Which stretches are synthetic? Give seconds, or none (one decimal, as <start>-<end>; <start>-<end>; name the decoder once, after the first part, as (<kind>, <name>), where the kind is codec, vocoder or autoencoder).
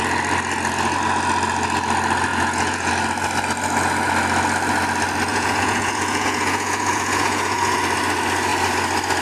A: 2.3-2.9 (vocoder, Vocos); 5.3-7.8